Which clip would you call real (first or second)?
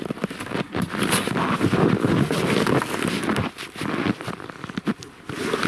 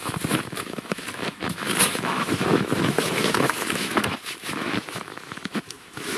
first